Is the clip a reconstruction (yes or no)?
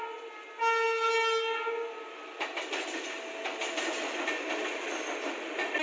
no